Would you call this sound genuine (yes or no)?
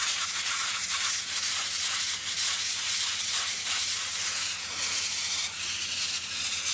no